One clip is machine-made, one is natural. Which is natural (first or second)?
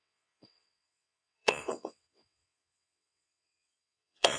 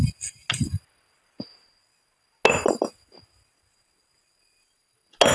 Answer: second